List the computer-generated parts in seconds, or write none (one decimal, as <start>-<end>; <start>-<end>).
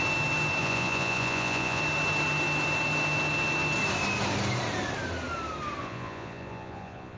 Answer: 0.6-1.8; 5.8-7.2